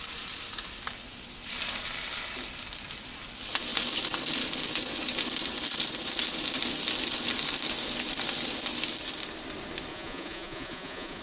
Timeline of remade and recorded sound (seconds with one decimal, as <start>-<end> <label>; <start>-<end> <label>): 0.0-9.9 recorded; 9.9-11.2 remade